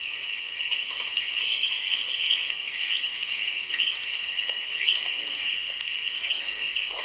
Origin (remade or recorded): remade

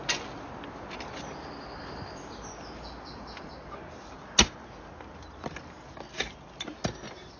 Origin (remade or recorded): recorded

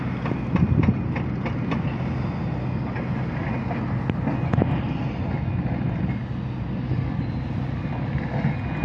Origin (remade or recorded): recorded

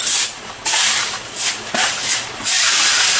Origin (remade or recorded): recorded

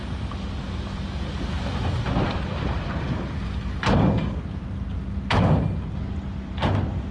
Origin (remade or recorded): recorded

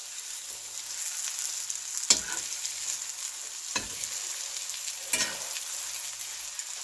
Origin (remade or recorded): recorded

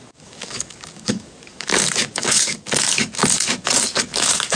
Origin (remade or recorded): remade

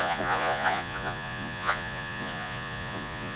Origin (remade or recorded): remade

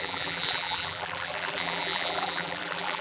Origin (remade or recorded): remade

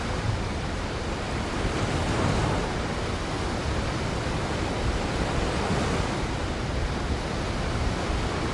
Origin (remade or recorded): recorded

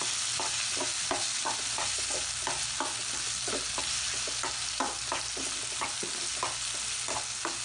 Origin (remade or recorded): recorded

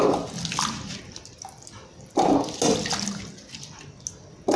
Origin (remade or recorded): recorded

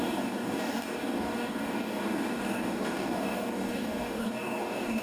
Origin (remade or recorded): remade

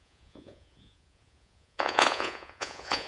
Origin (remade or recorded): remade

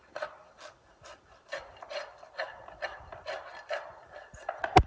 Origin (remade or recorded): remade